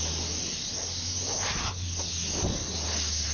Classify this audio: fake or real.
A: real